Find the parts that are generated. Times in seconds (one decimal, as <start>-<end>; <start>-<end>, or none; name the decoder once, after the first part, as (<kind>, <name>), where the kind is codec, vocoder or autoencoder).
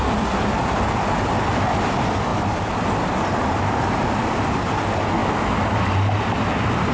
0.0-2.3 (vocoder, BigVGAN v2); 4.2-5.2